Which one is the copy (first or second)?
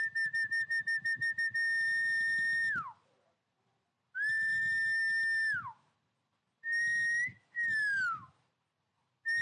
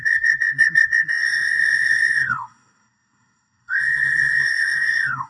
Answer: second